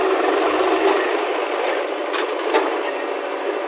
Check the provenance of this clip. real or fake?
real